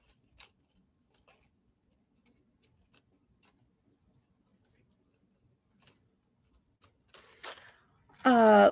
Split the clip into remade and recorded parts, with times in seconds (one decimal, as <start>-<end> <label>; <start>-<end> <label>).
0.0-8.7 recorded